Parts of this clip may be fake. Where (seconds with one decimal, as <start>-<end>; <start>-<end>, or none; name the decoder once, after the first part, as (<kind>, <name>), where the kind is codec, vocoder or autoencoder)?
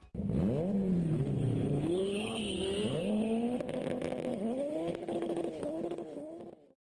0.9-2.4 (codec, HILCodec); 2.9-3.6; 4.3-6.4